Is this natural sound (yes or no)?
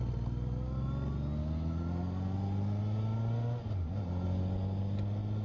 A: yes